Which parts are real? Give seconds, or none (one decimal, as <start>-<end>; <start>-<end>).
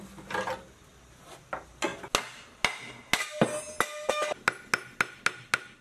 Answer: 0.0-5.8